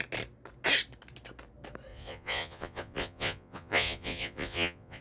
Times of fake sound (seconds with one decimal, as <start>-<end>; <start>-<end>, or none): 1.9-5.0

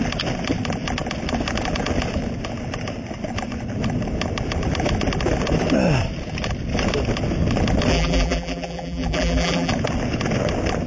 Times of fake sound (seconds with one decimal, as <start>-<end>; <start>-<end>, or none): 7.9-9.7

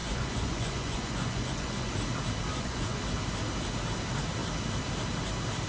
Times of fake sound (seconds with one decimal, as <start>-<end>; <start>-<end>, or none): 0.0-1.9; 2.5-3.0

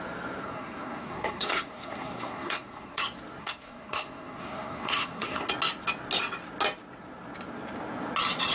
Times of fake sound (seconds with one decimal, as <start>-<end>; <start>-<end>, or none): 0.4-3.0; 3.4-5.5

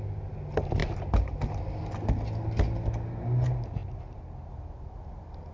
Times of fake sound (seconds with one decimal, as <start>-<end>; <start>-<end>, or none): none

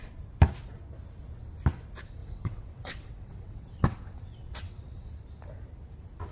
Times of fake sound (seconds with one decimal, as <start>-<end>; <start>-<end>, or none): 2.2-5.1

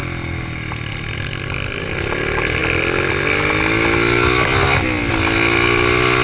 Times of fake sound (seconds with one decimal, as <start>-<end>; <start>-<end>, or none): none

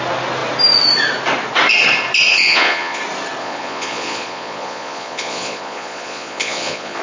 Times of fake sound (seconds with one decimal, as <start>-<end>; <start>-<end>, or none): 2.3-3.0; 3.4-7.0